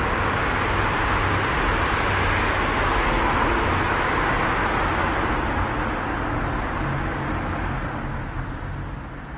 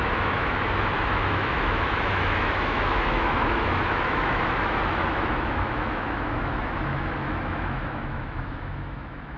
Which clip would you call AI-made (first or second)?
second